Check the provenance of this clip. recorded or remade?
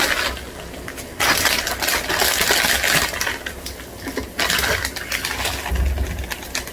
recorded